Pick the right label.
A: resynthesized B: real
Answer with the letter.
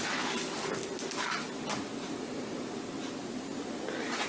B